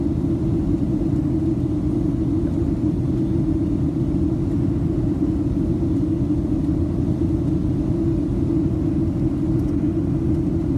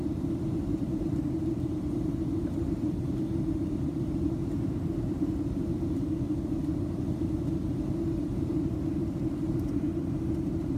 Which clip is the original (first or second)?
first